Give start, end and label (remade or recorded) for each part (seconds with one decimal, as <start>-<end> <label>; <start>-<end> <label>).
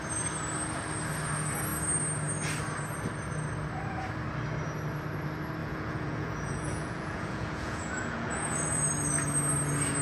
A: 0.0-5.6 recorded; 5.6-8.8 remade; 8.8-10.0 recorded